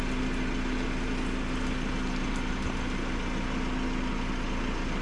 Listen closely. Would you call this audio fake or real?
real